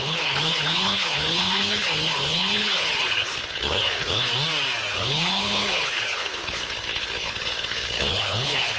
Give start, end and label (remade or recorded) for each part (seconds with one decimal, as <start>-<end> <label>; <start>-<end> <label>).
0.0-4.3 remade; 4.3-4.9 recorded; 4.9-8.8 remade